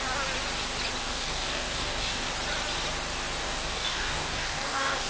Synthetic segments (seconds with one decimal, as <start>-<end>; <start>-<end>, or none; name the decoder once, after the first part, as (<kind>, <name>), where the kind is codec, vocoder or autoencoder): 1.0-2.3 (codec, DAC); 3.4-5.1